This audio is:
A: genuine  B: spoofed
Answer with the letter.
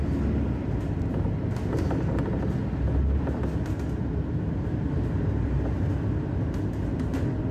A